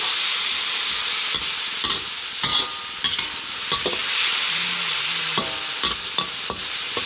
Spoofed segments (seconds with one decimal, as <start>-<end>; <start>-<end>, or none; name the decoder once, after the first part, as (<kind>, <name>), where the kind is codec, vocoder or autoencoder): none